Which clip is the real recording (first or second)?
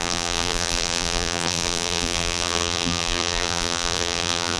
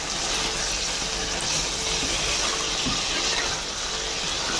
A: second